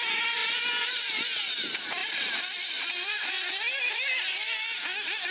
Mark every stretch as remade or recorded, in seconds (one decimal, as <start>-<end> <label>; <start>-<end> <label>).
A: 0.0-2.0 recorded; 2.0-3.5 remade; 3.5-5.3 recorded